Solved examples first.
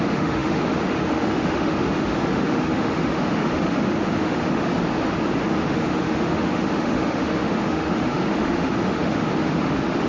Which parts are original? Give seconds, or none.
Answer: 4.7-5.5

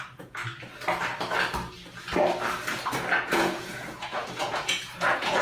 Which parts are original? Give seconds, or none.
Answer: 0.4-3.3

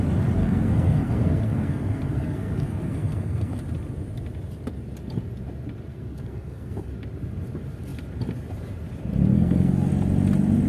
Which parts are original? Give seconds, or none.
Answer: 0.0-0.4; 3.6-5.9; 6.9-9.3; 9.9-10.7

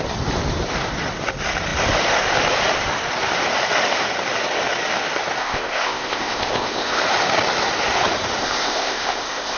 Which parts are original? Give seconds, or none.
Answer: 0.0-5.4; 7.0-8.4

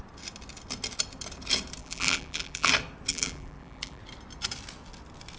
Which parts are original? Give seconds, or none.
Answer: 0.0-1.8; 2.7-3.1; 4.0-5.4

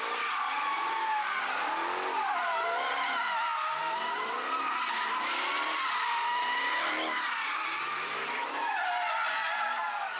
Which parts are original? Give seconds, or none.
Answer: 0.0-10.2